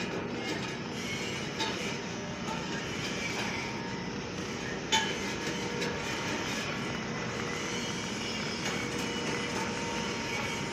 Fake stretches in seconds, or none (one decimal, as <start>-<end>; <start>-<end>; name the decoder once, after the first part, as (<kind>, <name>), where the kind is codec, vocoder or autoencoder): 2.1-2.8 (codec, SNAC)

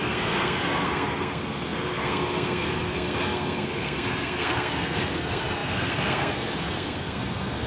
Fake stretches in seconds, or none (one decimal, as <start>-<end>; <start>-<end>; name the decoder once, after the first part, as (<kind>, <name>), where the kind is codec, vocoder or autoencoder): 0.0-7.7 (codec, SNAC)

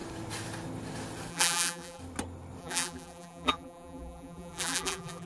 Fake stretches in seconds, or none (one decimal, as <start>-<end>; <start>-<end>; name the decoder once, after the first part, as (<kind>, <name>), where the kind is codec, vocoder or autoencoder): 1.3-2.0 (vocoder, BigVGAN v2); 2.6-5.3

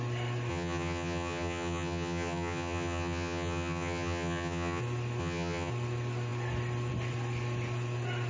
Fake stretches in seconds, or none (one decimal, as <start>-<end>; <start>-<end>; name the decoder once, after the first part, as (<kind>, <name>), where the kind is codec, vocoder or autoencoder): 0.5-4.8 (vocoder, HiFi-GAN); 5.2-5.7

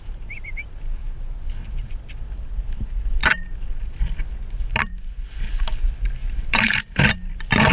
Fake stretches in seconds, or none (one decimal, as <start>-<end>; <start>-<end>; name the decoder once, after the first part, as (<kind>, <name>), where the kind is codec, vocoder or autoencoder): 6.2-7.0 (vocoder, BigVGAN v2)

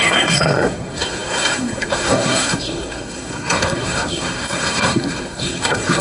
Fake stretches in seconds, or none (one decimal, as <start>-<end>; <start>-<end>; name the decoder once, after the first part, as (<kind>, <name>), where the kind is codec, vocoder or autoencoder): 0.0-6.0 (codec, SNAC)